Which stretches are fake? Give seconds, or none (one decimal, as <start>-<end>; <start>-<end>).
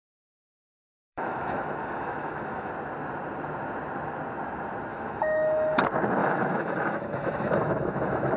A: 0.7-2.7; 4.9-5.8; 6.2-8.4